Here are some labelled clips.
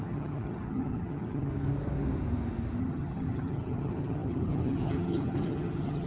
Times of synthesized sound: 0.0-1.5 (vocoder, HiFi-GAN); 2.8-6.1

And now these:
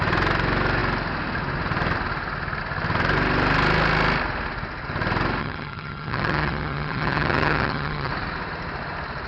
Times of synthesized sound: 5.4-8.1 (vocoder, HiFi-GAN)

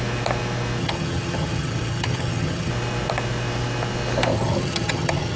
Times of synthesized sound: 0.8-2.7 (vocoder, HiFi-GAN); 4.3-5.4

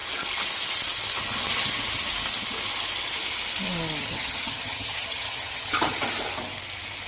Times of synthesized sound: 4.1-6.0 (vocoder, HiFi-GAN)

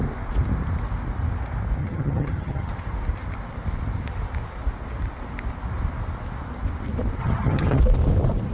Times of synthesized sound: 1.8-2.7 (vocoder, HiFi-GAN); 7.2-7.8

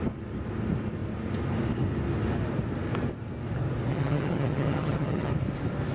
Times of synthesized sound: 3.9-5.3 (vocoder, HiFi-GAN)

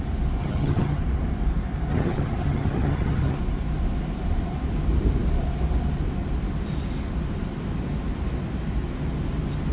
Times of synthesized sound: 0.4-1.0 (vocoder, HiFi-GAN); 1.9-3.4

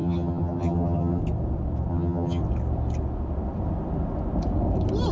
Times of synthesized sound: 0.0-1.2 (vocoder, HiFi-GAN); 1.9-2.4